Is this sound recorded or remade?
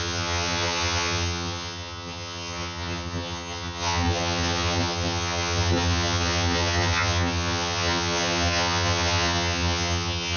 remade